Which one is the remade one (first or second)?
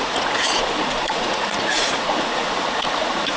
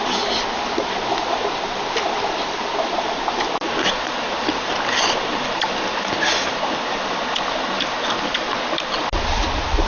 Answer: first